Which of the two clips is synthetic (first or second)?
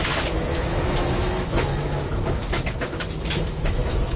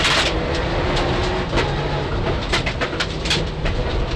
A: first